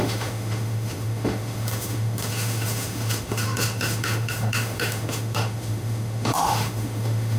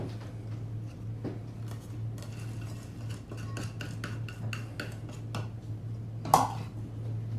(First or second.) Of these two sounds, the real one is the second